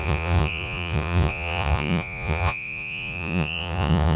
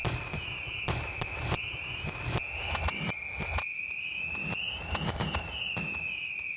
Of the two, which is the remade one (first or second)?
first